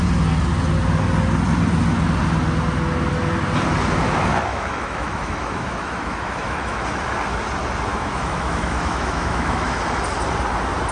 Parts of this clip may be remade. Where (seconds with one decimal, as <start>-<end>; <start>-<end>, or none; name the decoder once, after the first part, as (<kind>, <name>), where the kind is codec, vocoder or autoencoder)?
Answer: 4.5-6.8 (autoencoder, DAC-VAE); 7.9-9.8